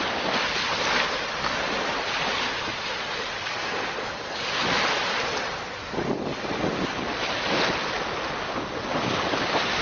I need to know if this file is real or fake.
real